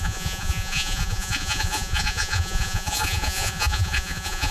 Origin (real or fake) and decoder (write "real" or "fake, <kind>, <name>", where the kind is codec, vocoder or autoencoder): fake, vocoder, Vocos